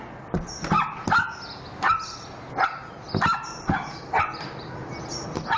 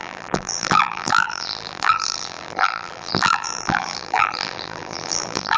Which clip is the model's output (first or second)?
second